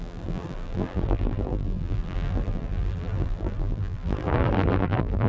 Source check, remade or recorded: remade